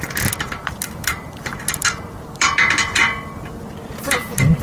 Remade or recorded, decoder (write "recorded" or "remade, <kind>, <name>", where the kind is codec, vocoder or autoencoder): remade, vocoder, BigVGAN v2